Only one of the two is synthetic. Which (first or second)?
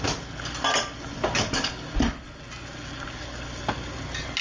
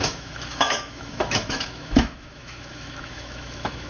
second